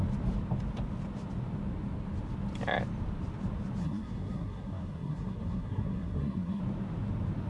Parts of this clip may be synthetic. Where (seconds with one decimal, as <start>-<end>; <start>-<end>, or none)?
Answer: 3.8-6.6